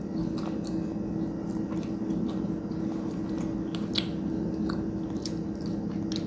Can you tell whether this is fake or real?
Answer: real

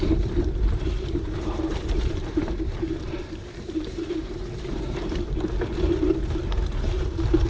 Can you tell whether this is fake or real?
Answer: fake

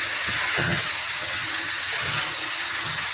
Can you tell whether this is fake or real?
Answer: fake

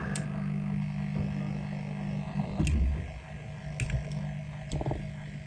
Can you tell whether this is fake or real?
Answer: real